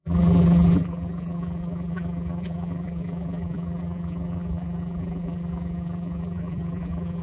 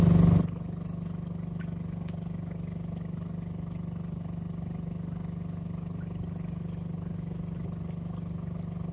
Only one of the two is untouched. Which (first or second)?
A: second